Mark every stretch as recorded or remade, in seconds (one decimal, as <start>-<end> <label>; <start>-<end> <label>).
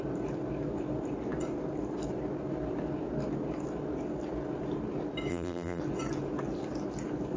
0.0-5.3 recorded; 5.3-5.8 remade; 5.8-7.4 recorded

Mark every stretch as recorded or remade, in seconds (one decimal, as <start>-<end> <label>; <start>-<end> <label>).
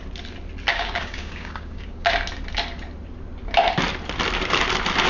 0.0-0.7 recorded; 0.7-2.1 remade; 2.1-5.1 recorded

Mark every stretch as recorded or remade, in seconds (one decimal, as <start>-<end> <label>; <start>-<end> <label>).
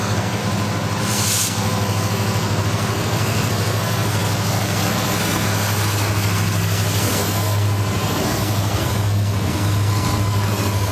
0.0-0.4 remade; 0.4-1.0 recorded; 1.0-10.9 remade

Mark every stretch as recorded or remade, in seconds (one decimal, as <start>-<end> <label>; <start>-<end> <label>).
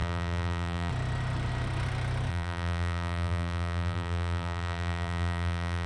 0.0-0.9 remade; 0.9-2.3 recorded; 2.3-5.9 remade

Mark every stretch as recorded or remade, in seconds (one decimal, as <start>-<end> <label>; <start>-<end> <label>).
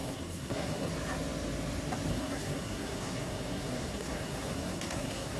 0.0-0.9 remade; 0.9-2.1 recorded; 2.1-5.4 remade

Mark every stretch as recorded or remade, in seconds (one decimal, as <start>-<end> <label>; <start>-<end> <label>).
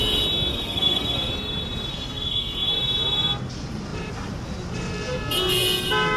0.0-0.5 recorded; 0.5-1.3 remade; 1.3-1.9 recorded; 1.9-2.7 remade; 2.7-6.2 recorded